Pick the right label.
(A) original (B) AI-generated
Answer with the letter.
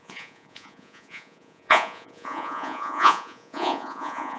B